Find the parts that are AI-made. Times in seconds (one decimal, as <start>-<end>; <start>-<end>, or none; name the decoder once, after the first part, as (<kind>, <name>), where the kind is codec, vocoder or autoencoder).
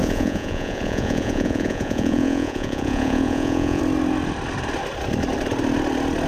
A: 0.0-3.8 (vocoder, Vocos)